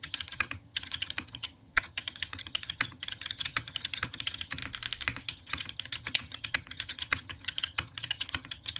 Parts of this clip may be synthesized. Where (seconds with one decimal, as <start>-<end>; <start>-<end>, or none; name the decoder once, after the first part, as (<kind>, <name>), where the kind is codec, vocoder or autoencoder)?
0.0-4.6 (vocoder, HiFi-GAN); 5.2-8.8